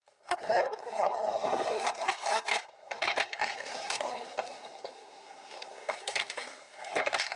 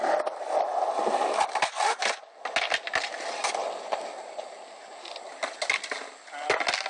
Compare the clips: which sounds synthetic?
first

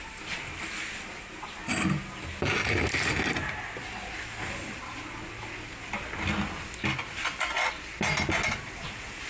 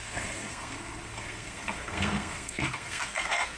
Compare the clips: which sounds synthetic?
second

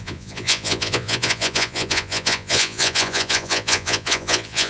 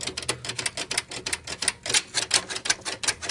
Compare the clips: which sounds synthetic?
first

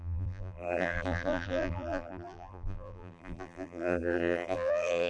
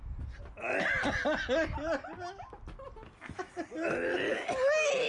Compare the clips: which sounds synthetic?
first